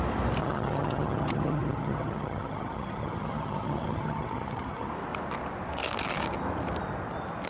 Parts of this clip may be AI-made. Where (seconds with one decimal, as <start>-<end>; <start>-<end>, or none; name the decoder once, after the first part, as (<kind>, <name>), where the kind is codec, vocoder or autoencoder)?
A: 0.4-4.9 (vocoder, HiFi-GAN)